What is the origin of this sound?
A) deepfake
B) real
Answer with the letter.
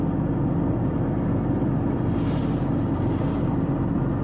A